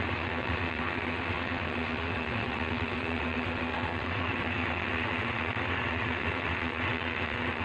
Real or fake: fake